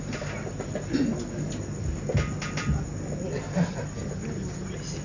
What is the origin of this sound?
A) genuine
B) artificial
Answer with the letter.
A